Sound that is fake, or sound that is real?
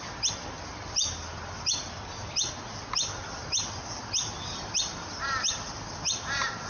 real